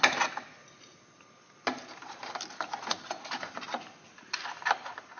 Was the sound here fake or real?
real